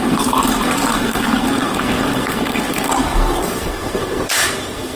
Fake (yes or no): yes